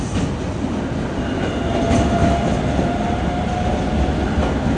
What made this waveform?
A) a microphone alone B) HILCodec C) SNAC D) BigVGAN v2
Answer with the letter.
A